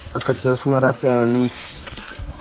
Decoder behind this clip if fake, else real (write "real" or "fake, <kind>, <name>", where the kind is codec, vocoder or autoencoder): fake, codec, SNAC